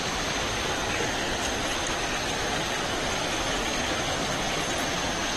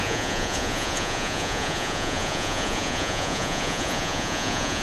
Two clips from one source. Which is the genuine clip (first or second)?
first